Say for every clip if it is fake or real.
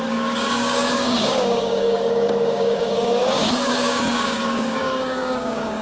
fake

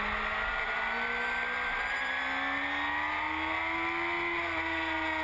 real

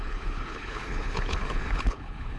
fake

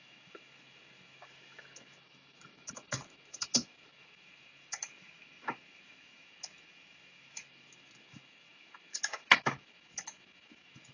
fake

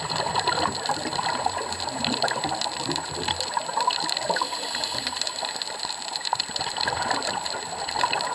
fake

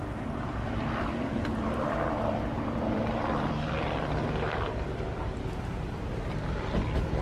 fake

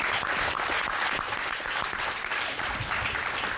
real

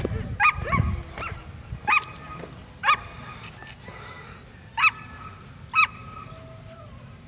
real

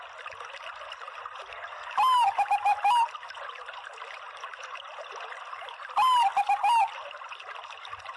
real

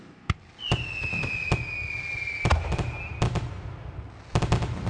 real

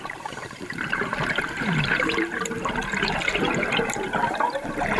fake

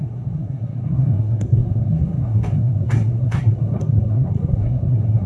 fake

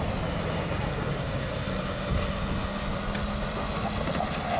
real